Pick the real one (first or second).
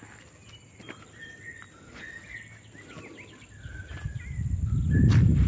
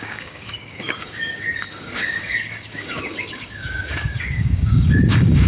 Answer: first